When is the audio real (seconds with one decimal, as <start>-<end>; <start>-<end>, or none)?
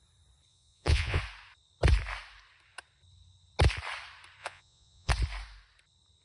0.0-0.5; 1.2-4.4; 5.1-6.2